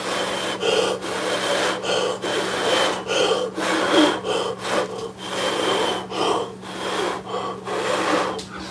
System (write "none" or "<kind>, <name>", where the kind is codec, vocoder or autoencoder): none